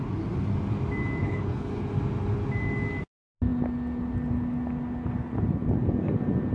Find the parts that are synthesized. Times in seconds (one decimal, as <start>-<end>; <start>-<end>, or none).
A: 1.2-1.8